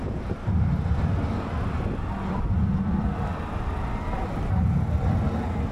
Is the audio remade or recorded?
recorded